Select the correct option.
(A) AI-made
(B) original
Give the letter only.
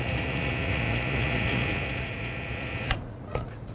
A